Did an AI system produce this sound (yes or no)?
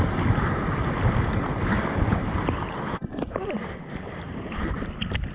no